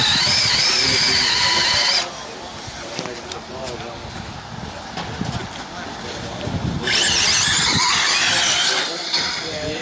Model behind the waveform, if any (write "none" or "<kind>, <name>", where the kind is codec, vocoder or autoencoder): none